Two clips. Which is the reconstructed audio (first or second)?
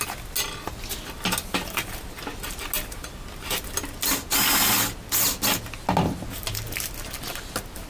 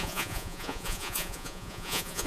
second